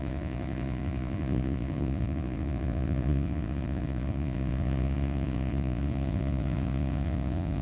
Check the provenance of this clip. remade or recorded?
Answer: remade